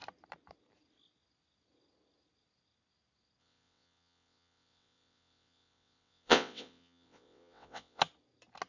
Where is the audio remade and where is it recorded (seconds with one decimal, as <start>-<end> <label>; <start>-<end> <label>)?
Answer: 0.0-3.4 recorded; 3.4-8.0 remade; 8.0-8.7 recorded